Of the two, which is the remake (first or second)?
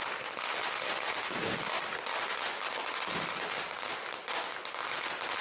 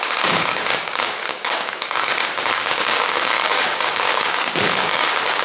second